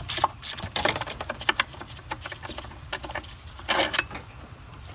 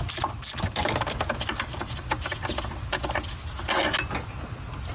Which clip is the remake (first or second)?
first